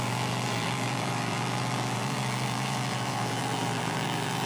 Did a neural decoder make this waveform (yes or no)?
yes